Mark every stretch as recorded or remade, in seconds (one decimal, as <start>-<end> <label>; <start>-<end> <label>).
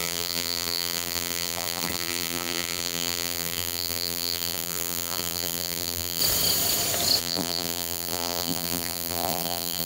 0.0-6.2 remade; 6.2-7.2 recorded; 7.2-9.9 remade